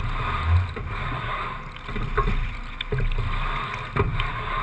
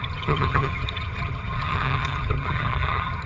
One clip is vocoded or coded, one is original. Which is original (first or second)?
first